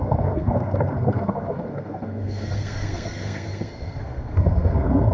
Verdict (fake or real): fake